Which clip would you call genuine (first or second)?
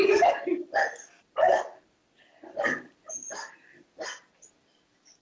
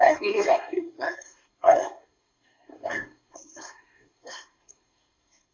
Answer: first